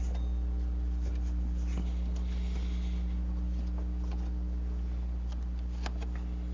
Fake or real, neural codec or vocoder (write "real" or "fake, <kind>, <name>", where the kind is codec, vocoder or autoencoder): real